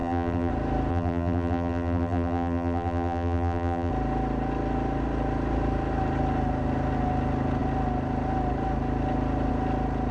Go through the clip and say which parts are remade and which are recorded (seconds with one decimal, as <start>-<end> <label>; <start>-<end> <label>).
0.0-0.5 remade; 0.5-0.9 recorded; 0.9-3.9 remade; 3.9-10.1 recorded